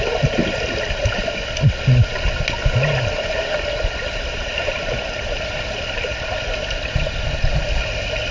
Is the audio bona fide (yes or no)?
yes